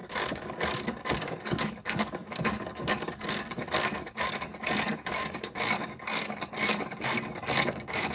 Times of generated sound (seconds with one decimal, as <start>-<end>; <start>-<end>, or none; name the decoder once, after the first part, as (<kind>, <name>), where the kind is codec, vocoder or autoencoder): 0.0-8.1 (codec, DAC)